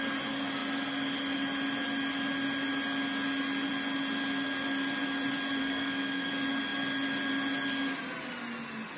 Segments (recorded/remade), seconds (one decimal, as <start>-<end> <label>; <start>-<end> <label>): 0.0-5.6 recorded; 5.6-6.3 remade; 6.3-9.0 recorded